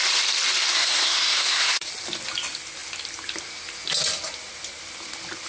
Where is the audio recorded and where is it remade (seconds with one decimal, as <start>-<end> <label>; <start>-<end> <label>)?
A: 0.0-0.7 recorded; 0.7-1.9 remade; 1.9-5.5 recorded